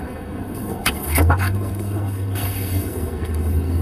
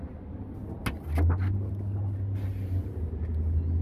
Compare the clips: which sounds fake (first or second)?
first